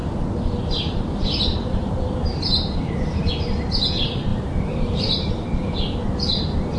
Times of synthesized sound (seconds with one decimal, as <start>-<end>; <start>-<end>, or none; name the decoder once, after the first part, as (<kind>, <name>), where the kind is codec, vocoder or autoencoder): 0.0-3.3 (vocoder, BigVGAN v2); 4.3-5.3